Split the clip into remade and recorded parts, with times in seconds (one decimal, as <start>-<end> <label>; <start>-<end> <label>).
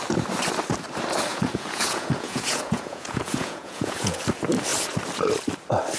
0.0-1.3 recorded; 1.3-4.2 remade; 4.2-6.0 recorded